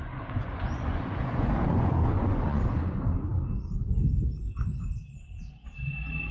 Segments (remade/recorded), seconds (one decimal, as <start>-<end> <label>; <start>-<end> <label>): 0.0-2.7 remade; 2.7-6.3 recorded